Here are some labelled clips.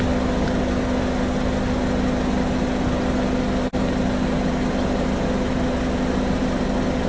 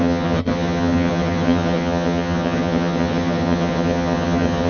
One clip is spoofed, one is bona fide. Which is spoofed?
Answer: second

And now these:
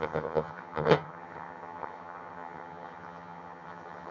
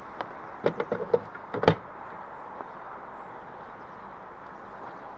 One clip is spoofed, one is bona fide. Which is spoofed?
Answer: first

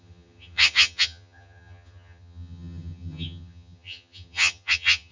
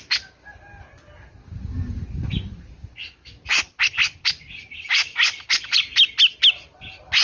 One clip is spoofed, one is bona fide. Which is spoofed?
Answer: first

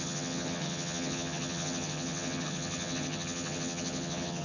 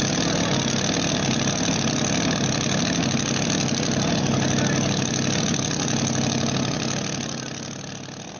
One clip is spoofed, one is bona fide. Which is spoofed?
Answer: first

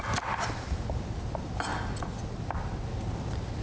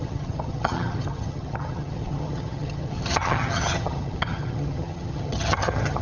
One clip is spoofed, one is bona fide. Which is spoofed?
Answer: second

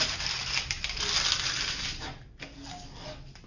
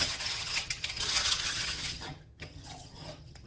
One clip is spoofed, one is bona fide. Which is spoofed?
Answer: second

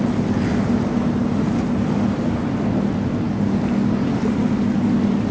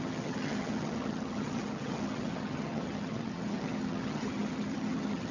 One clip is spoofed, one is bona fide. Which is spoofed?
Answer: second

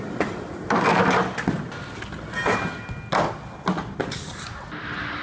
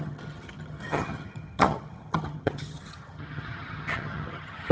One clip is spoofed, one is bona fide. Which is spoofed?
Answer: second